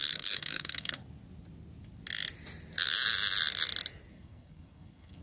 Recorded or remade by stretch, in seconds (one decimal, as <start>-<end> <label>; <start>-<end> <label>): 0.0-1.0 remade; 1.0-4.1 recorded; 4.1-5.2 remade